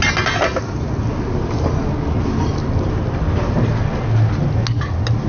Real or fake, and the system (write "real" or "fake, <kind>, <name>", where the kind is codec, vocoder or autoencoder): real